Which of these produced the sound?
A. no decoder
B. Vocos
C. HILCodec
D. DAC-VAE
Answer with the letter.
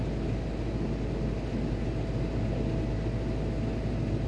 A